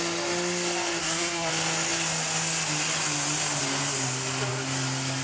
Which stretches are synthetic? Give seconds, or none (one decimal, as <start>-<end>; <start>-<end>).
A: 1.0-1.5